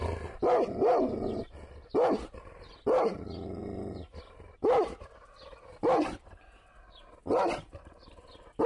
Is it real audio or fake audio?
real